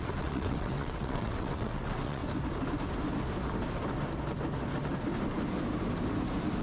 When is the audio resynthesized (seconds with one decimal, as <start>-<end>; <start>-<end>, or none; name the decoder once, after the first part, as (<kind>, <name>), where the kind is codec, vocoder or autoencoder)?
0.0-2.2 (vocoder, WaveNeXt)